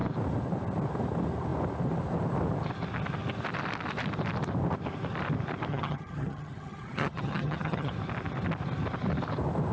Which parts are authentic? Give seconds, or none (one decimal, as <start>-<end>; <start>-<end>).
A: 0.0-5.7; 7.9-9.7